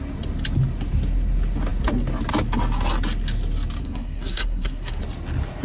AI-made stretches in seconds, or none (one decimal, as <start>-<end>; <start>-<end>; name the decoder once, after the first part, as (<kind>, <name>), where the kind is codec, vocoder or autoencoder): 3.8-5.0 (codec, SNAC)